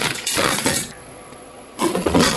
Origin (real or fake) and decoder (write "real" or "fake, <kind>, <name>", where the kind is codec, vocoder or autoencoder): fake, vocoder, Vocos